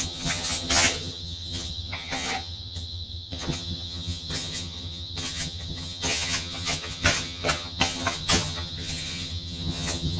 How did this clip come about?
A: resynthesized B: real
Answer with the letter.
A